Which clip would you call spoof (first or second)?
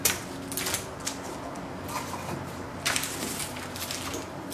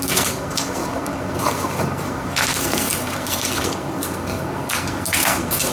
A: second